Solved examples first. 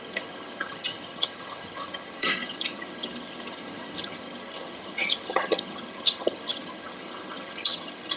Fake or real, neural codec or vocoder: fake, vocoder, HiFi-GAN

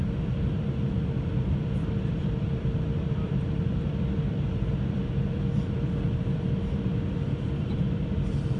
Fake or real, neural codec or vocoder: fake, vocoder, BigVGAN v2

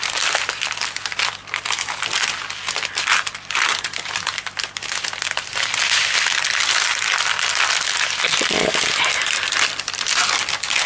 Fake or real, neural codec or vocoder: real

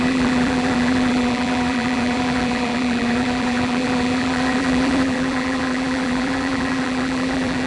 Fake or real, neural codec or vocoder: fake, vocoder, BigVGAN v2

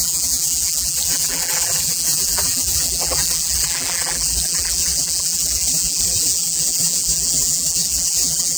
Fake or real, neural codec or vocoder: fake, vocoder, BigVGAN v2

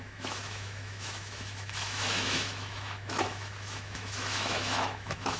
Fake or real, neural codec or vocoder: fake, autoencoder, DAC-VAE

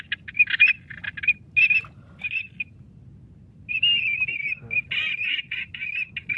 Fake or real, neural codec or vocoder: real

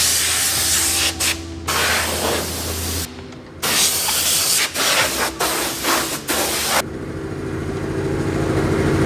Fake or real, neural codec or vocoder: real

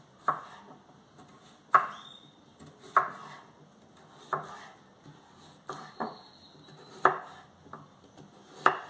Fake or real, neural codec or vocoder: real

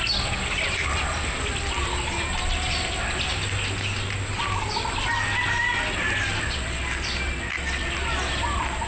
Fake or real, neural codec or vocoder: real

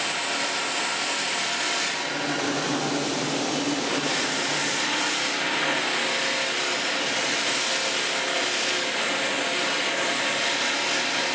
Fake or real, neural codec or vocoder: real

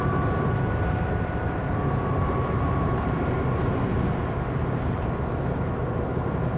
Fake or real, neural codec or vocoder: fake, vocoder, BigVGAN v2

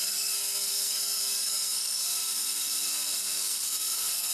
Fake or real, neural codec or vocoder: fake, codec, SNAC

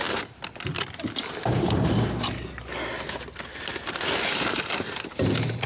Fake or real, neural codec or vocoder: real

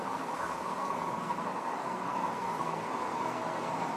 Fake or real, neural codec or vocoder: fake, codec, SNAC